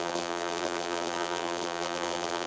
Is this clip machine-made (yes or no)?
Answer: yes